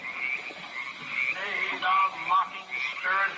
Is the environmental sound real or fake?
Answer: real